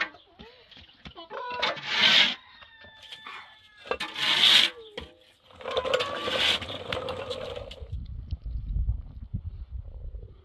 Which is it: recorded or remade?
recorded